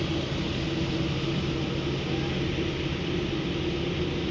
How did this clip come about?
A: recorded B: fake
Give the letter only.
A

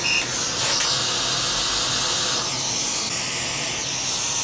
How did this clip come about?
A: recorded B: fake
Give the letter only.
A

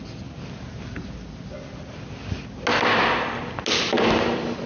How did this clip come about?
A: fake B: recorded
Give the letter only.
B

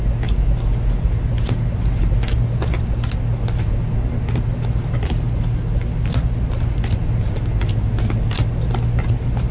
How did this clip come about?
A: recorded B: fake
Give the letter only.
A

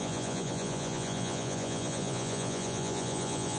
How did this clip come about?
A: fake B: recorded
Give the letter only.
A